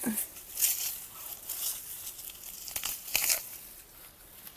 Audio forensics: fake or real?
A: real